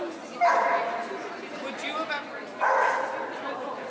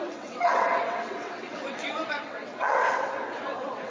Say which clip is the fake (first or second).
second